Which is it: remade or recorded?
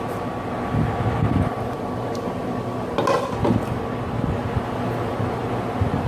recorded